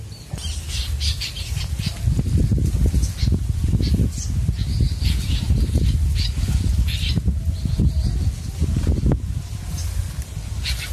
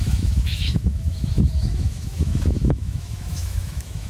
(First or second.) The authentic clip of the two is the first